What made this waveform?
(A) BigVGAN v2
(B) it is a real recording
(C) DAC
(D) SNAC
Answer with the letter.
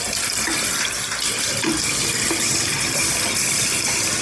B